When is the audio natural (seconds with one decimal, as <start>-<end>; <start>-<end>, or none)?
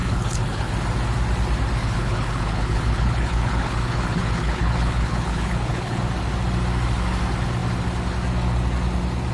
0.7-1.8; 6.0-9.3